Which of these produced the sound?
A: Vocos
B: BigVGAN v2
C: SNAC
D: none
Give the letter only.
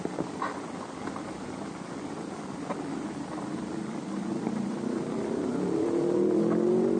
B